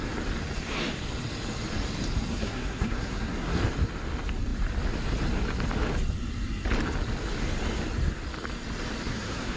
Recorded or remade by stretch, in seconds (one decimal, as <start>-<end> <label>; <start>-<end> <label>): 0.0-2.3 recorded; 2.3-3.6 remade; 3.6-9.1 recorded; 9.1-9.6 remade